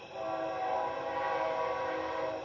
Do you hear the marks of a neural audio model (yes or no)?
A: no